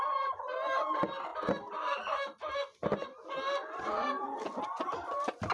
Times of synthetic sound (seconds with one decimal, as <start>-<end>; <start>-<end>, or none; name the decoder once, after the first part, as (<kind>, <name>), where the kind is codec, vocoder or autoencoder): none